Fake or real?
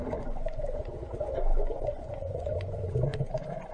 fake